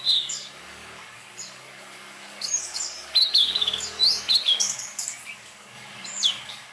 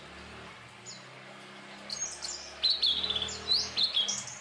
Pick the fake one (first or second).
first